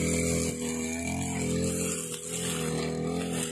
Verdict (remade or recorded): recorded